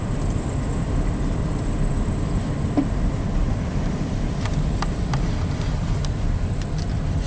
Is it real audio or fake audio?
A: fake